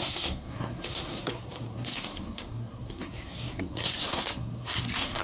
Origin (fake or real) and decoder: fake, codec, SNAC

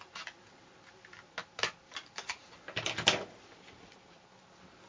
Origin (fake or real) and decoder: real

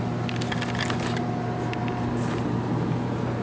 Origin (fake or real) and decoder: real